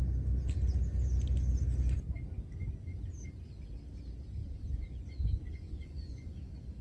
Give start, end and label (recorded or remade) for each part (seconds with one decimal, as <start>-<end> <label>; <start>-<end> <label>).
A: 0.0-4.4 recorded; 4.4-6.8 remade